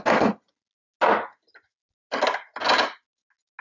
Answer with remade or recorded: recorded